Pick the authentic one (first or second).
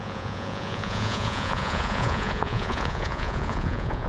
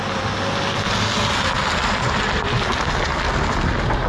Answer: second